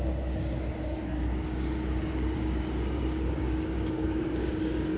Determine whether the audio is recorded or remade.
remade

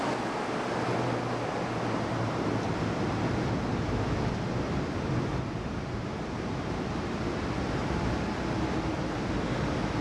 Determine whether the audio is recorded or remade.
recorded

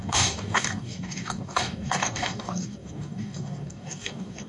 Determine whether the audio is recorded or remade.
remade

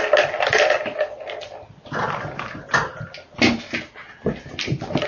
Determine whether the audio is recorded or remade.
recorded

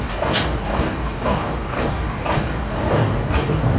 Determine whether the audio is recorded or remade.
remade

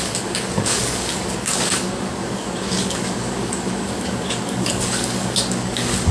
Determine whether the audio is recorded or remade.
remade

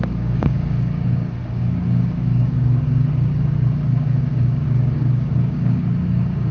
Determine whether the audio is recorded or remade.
remade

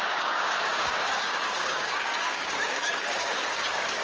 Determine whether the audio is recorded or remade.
remade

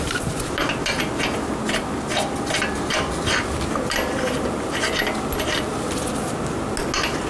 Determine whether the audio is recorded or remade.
recorded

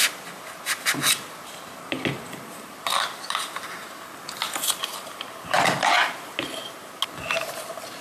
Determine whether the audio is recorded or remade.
recorded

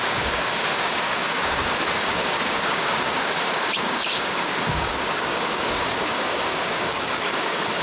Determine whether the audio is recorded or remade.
remade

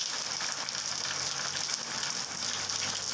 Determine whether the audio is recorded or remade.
recorded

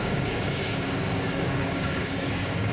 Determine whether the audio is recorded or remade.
remade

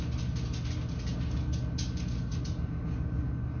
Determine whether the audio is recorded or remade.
recorded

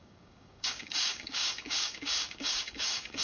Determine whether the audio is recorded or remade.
remade